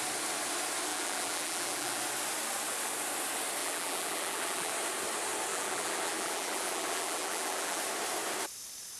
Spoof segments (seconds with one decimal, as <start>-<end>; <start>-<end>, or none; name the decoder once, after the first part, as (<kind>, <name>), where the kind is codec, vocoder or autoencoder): 0.9-2.0 (vocoder, BigVGAN v2); 3.6-4.7; 5.5-7.8